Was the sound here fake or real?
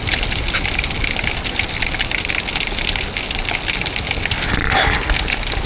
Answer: real